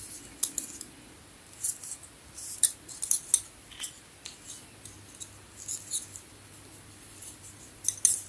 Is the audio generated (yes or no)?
no